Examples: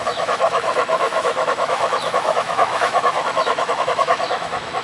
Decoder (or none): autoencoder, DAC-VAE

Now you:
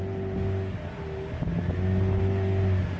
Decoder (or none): none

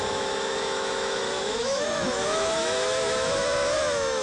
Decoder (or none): autoencoder, DAC-VAE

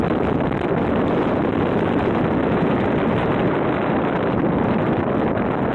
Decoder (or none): none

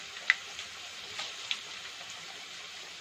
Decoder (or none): none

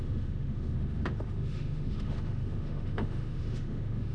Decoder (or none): autoencoder, DAC-VAE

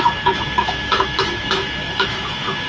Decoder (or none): autoencoder, DAC-VAE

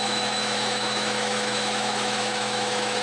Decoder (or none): autoencoder, DAC-VAE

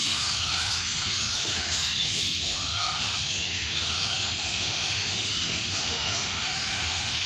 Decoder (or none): autoencoder, DAC-VAE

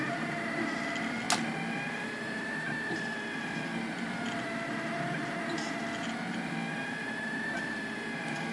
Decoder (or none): none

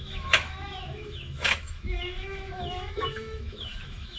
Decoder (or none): autoencoder, DAC-VAE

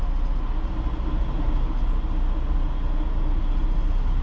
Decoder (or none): none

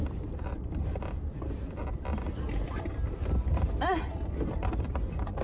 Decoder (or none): none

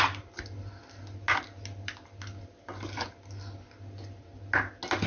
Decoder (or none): none